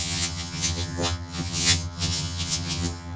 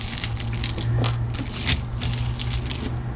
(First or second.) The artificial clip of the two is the first